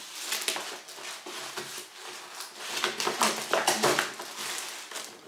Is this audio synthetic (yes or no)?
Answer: no